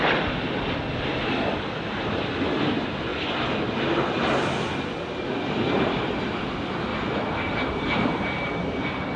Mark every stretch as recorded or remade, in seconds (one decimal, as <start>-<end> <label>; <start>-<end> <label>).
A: 0.0-6.9 remade; 6.9-7.4 recorded; 7.4-9.2 remade

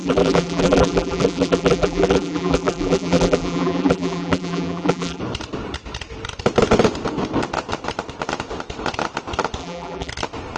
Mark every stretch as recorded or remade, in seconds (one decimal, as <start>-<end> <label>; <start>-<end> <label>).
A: 0.0-5.2 remade; 5.2-9.6 recorded; 9.6-10.1 remade; 10.1-10.6 recorded

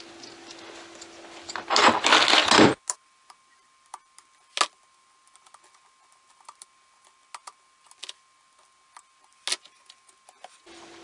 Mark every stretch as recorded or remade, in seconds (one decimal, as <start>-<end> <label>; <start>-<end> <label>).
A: 0.0-11.0 recorded

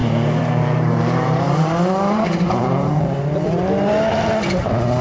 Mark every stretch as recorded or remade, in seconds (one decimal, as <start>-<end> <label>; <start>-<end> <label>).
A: 0.0-3.0 remade; 3.0-5.0 recorded

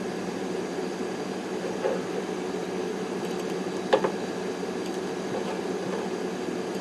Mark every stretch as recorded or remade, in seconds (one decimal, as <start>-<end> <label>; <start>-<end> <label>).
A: 0.0-2.6 recorded; 2.6-3.2 remade; 3.2-6.8 recorded